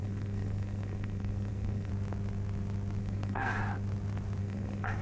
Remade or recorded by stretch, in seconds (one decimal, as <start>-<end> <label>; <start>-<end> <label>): 0.0-1.9 remade; 1.9-3.0 recorded; 3.0-3.6 remade; 3.6-4.4 recorded; 4.4-5.0 remade